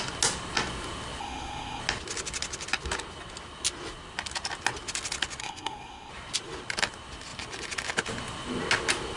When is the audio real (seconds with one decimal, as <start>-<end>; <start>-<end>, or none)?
0.0-1.2; 1.8-5.4; 6.1-9.2